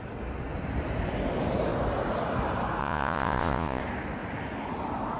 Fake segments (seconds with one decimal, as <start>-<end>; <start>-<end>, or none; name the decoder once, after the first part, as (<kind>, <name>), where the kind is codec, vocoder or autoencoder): 2.8-3.8 (vocoder, Vocos)